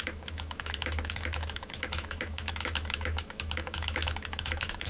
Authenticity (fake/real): fake